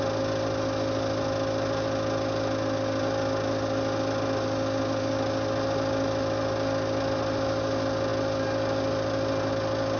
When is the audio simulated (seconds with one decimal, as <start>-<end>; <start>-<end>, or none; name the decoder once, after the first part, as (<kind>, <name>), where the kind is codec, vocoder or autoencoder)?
none